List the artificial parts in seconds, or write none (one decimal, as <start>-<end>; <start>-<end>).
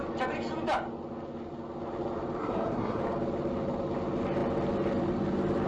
2.4-3.0